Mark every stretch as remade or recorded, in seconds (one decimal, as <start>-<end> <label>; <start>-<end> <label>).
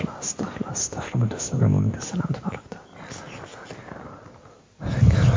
0.0-0.8 recorded; 0.8-2.0 remade; 2.0-5.4 recorded